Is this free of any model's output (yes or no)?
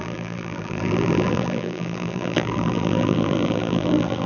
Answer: no